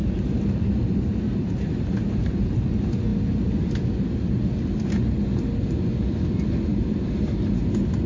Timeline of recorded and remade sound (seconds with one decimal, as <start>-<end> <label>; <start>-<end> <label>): 0.0-2.7 remade; 2.7-6.7 recorded; 6.7-7.4 remade; 7.4-8.1 recorded

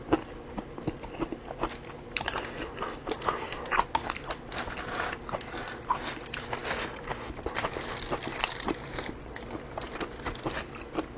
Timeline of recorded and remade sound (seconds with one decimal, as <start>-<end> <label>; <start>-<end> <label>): 0.0-11.2 recorded

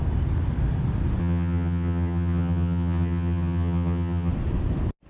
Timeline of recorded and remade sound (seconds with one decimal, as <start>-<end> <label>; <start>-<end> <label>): 0.0-1.2 recorded; 1.2-4.3 remade; 4.3-5.1 recorded

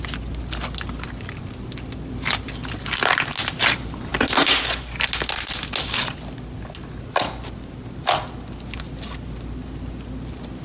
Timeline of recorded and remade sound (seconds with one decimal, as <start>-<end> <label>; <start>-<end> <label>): 0.0-10.6 recorded

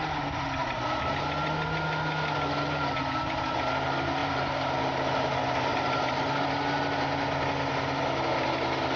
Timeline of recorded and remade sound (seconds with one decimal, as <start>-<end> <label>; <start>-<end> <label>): 0.0-0.6 recorded; 0.6-1.1 remade; 1.1-4.2 recorded; 4.2-5.3 remade; 5.3-5.7 recorded; 5.7-6.5 remade; 6.5-9.0 recorded

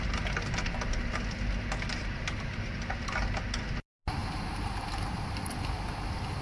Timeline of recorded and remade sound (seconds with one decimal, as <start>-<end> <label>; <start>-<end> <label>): 0.0-1.9 recorded; 1.9-2.5 remade; 2.5-4.2 recorded; 4.2-5.6 remade; 5.6-6.4 recorded

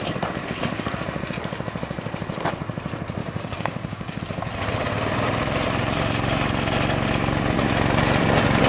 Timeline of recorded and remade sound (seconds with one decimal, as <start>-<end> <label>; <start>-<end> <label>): 0.0-3.2 recorded; 3.2-4.2 remade; 4.2-8.7 recorded